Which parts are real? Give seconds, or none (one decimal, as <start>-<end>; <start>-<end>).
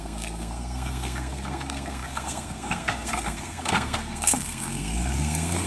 none